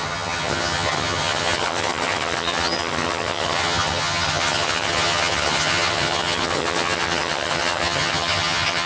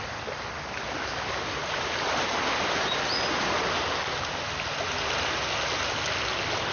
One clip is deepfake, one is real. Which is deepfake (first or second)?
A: first